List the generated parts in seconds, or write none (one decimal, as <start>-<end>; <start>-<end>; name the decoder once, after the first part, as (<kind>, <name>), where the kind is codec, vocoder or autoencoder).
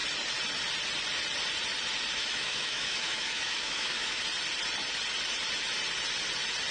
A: 2.2-4.2 (autoencoder, DAC-VAE)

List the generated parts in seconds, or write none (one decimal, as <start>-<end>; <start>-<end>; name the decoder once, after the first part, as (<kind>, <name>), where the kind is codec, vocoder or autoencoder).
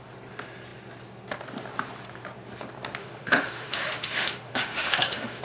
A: 3.0-5.4 (autoencoder, DAC-VAE)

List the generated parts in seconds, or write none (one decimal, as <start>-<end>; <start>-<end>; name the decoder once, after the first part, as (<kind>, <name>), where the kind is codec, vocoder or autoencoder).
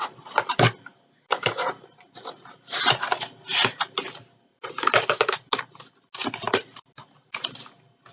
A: none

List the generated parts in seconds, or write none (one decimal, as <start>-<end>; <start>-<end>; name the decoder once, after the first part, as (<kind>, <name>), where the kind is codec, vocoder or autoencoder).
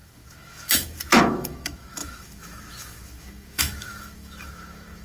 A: 0.0-5.0 (autoencoder, DAC-VAE)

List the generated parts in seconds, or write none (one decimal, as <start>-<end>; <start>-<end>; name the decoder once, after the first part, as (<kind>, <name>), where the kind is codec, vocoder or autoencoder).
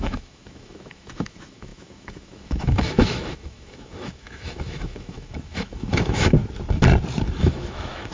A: 0.0-6.4 (autoencoder, DAC-VAE); 7.4-8.1